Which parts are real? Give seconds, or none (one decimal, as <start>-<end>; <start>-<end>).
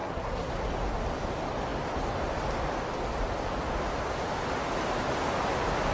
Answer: 0.5-5.9